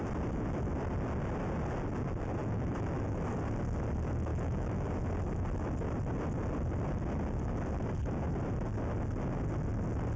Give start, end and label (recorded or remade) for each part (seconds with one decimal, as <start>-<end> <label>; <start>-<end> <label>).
0.0-2.4 recorded; 2.4-3.3 remade; 3.3-4.3 recorded; 4.3-4.9 remade; 4.9-10.2 recorded